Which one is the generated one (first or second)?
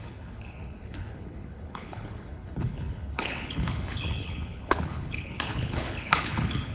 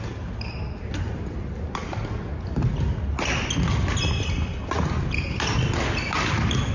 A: first